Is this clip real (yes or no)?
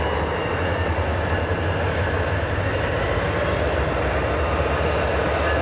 yes